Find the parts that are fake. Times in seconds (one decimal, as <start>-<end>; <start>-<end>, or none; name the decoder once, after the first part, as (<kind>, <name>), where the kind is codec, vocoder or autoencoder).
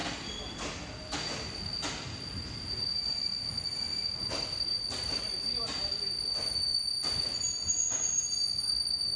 none